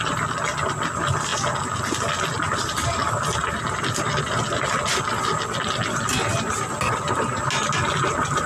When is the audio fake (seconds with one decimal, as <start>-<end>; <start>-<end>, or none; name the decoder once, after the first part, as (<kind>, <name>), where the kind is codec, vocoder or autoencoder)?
none